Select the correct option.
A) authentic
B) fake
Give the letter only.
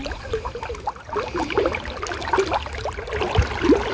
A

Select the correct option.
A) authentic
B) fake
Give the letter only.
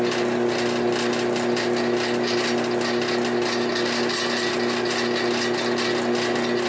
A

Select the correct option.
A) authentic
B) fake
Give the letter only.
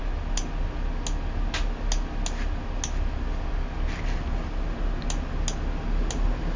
A